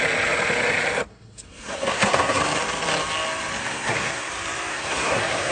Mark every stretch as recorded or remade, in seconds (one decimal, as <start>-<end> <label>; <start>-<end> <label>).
0.0-1.1 recorded; 1.1-2.4 remade; 2.4-3.6 recorded; 3.6-4.3 remade; 4.3-4.7 recorded; 4.7-5.5 remade